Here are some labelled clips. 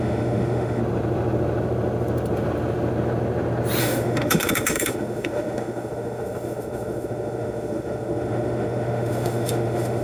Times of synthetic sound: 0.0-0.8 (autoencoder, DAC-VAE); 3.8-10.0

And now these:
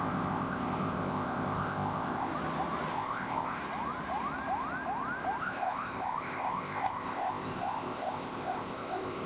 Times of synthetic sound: 0.0-2.3 (codec, ZipCodec); 2.9-3.6; 5.4-9.3